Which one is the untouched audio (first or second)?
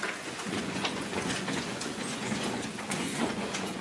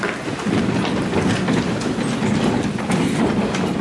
second